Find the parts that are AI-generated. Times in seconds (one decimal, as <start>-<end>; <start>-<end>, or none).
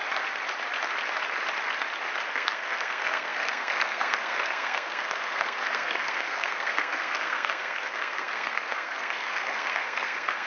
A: 2.3-10.5